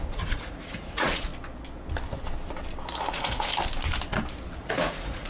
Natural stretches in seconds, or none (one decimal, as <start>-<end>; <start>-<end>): 1.3-3.1; 3.5-4.6